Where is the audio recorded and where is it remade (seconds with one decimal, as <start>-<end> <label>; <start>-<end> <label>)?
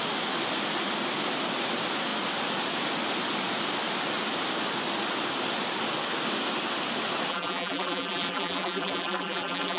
0.0-7.3 recorded; 7.3-9.8 remade